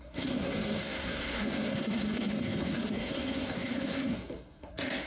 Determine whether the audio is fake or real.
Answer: fake